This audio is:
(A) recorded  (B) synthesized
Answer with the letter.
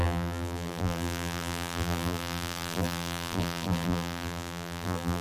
B